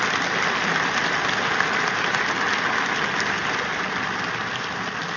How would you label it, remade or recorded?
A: recorded